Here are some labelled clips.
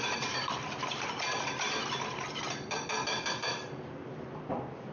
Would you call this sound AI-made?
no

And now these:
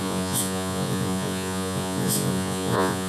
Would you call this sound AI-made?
yes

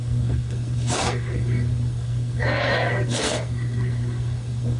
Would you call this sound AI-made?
yes